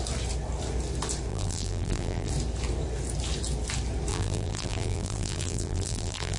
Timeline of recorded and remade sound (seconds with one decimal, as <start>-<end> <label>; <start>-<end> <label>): 0.0-1.3 recorded; 1.3-2.3 remade; 2.3-4.1 recorded; 4.1-6.4 remade